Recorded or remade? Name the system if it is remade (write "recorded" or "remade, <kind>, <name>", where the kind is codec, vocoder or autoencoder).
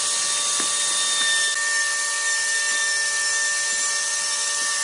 recorded